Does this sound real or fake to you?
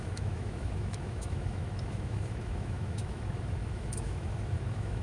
fake